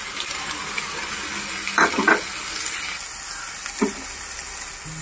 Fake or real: real